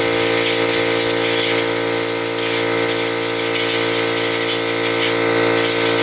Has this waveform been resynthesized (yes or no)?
no